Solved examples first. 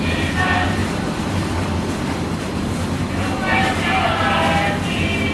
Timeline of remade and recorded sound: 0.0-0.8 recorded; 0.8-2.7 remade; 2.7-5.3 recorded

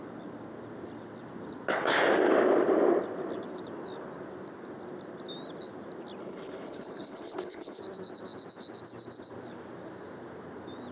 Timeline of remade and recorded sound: 0.0-6.2 recorded; 6.2-7.8 remade; 7.8-10.9 recorded

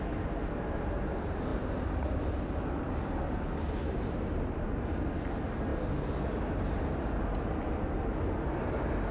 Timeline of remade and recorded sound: 0.0-9.1 recorded